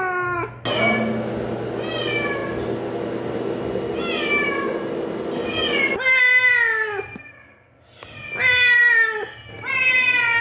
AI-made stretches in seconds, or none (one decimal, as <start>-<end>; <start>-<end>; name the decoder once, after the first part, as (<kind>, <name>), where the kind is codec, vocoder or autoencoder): none